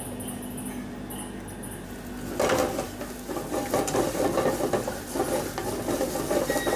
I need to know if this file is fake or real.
real